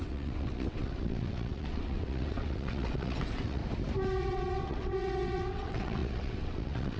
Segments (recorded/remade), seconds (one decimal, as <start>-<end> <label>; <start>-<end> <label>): 0.0-3.6 remade; 3.6-4.2 recorded; 4.2-7.0 remade